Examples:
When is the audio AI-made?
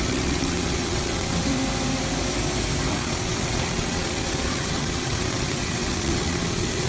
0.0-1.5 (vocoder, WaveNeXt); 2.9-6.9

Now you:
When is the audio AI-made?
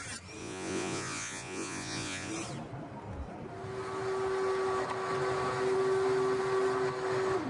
0.4-2.3 (vocoder, Vocos)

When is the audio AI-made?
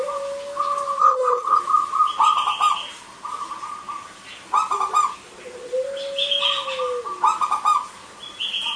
1.0-1.6 (codec, HILCodec)